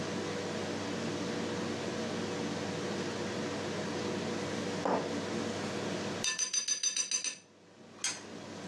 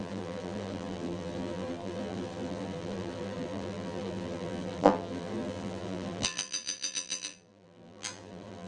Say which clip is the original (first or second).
first